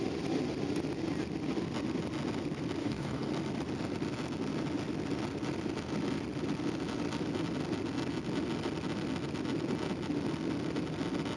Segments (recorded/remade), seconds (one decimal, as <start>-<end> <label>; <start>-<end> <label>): 0.0-2.8 recorded; 2.8-3.3 remade; 3.3-11.4 recorded